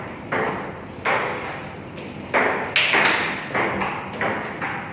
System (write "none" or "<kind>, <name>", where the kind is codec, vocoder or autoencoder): none